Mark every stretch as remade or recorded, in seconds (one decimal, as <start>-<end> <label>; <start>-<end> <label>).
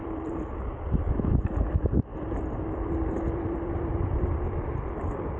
0.0-5.4 recorded